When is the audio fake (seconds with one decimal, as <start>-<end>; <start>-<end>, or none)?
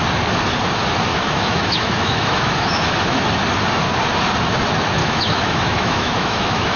1.1-3.2; 5.0-6.8